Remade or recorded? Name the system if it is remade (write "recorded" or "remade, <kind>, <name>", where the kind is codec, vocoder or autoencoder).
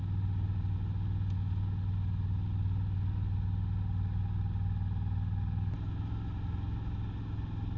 recorded